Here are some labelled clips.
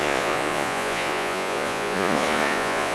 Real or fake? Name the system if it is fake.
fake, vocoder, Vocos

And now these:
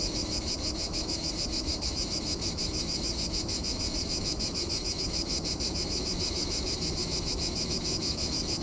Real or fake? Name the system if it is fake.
fake, autoencoder, DAC-VAE